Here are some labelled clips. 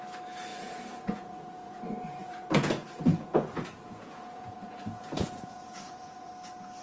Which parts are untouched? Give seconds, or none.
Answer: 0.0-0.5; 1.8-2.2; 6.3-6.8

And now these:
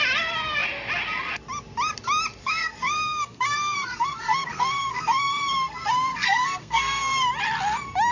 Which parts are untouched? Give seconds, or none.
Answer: 0.0-2.4; 7.3-8.1

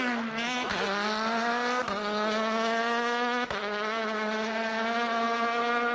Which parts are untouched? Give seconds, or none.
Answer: 0.7-1.8

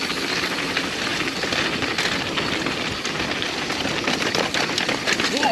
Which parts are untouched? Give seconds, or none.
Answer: 0.0-5.5

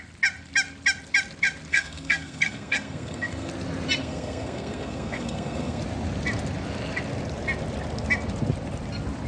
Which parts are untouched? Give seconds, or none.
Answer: 0.0-1.7; 3.5-4.0; 5.8-9.3

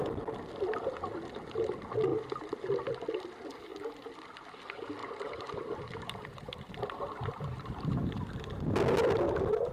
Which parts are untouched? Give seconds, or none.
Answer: 0.0-2.1; 2.7-5.0; 8.1-9.7

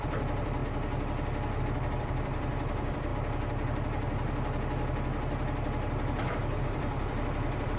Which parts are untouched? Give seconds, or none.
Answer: 0.6-1.6; 3.1-6.6

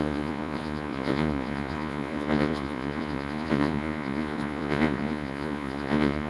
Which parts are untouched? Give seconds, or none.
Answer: none